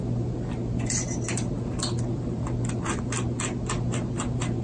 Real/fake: real